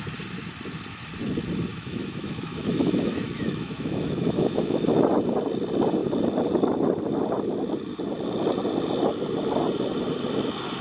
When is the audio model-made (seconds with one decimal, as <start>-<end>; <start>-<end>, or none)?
1.7-5.0